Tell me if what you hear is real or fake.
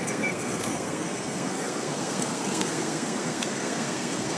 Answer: fake